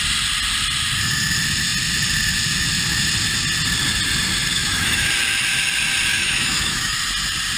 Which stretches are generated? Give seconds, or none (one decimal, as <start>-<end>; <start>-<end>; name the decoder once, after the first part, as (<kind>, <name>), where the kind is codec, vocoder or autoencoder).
4.5-5.1 (autoencoder, DAC-VAE); 6.1-7.0